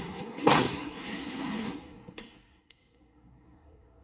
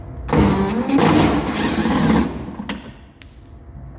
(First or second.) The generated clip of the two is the first